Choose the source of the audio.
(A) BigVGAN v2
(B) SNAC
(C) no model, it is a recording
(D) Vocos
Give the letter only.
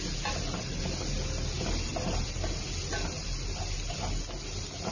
C